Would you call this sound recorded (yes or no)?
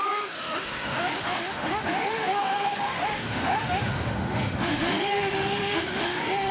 no